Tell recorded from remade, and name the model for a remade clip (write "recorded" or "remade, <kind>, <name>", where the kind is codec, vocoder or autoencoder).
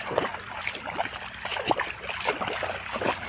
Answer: recorded